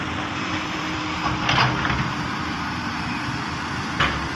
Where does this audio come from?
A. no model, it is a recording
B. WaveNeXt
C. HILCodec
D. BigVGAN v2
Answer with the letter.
D